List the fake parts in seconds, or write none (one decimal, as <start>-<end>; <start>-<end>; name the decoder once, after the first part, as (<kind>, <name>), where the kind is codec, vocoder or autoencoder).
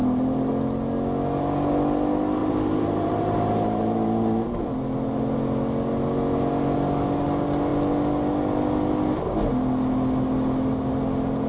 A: 0.0-0.5 (vocoder, BigVGAN v2); 2.4-4.6